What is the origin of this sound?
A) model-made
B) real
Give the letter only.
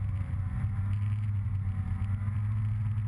A